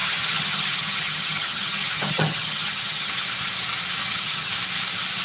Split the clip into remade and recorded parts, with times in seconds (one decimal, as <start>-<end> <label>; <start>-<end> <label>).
0.0-3.1 remade; 3.1-4.0 recorded; 4.0-4.5 remade; 4.5-5.2 recorded